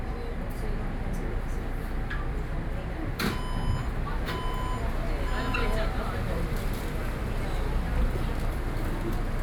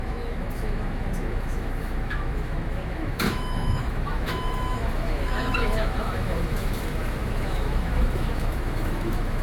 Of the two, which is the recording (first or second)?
first